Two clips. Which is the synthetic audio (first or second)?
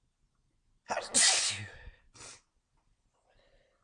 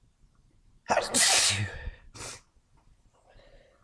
second